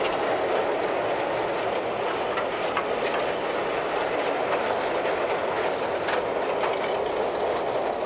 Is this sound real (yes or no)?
yes